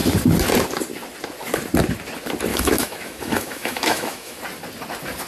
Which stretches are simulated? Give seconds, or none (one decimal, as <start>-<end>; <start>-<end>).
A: 2.5-4.4